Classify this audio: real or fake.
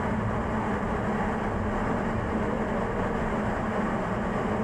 real